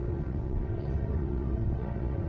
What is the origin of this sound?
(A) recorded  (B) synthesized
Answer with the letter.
B